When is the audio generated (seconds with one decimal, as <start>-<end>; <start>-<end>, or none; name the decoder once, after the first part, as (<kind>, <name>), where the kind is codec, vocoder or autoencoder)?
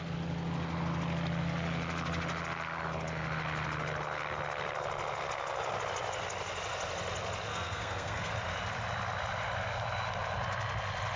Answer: 7.5-8.3 (codec, SNAC)